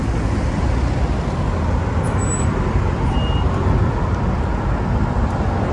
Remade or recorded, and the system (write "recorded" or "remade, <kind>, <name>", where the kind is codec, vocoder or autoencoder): recorded